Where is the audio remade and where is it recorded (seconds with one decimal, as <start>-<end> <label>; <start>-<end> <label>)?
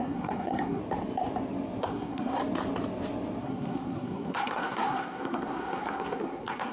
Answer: 0.0-0.8 remade; 0.8-1.8 recorded; 1.8-2.4 remade; 2.4-3.4 recorded; 3.4-6.7 remade